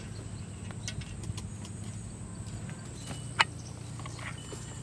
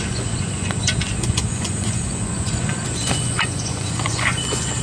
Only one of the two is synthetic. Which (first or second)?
second